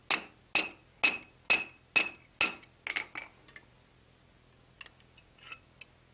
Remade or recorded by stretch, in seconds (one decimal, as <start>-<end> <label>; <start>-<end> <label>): 0.0-6.1 recorded